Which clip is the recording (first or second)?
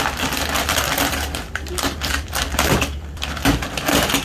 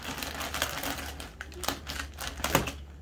second